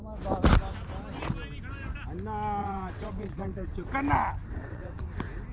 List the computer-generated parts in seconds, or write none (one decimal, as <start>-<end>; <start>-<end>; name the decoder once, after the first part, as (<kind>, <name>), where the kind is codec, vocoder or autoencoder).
2.6-3.9 (vocoder, WaveNeXt); 4.5-5.1

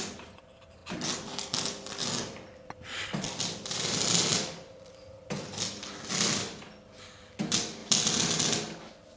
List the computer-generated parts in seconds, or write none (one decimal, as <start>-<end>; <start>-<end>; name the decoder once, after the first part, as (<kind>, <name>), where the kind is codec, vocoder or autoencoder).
0.0-0.8 (vocoder, BigVGAN v2); 6.1-7.8; 8.4-9.2

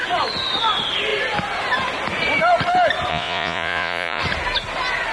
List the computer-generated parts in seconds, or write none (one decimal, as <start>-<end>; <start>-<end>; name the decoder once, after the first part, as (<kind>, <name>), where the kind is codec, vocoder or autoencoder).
3.1-4.2 (vocoder, Vocos)

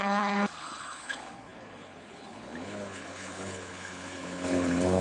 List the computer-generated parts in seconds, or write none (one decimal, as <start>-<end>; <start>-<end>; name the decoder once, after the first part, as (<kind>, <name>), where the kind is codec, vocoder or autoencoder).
0.0-5.0 (codec, HILCodec)